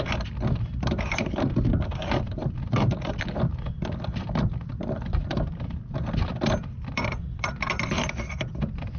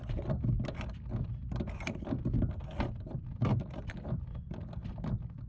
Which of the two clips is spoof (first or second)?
first